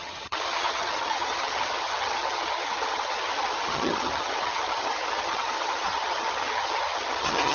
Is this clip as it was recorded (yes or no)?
no